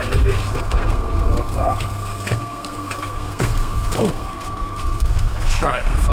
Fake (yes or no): yes